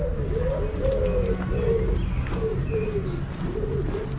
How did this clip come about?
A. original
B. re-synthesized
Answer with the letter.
A